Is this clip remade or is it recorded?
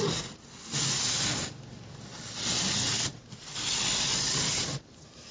recorded